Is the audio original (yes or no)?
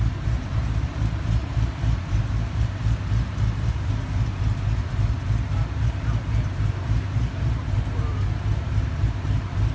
no